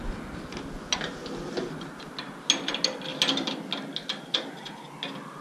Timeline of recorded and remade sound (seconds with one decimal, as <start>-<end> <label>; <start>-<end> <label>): 0.0-5.4 recorded